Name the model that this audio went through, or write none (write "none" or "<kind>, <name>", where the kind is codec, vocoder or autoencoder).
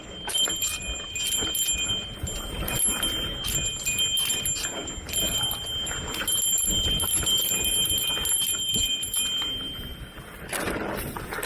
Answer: none